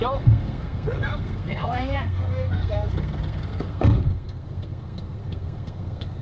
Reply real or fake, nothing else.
fake